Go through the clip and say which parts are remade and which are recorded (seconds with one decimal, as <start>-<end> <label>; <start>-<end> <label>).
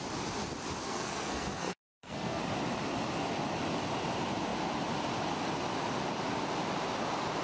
0.0-0.8 recorded; 0.8-2.4 remade; 2.4-7.4 recorded